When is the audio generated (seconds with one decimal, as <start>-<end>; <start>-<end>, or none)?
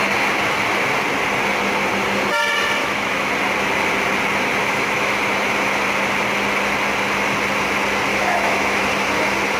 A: 2.8-3.3; 4.6-5.2; 8.1-8.8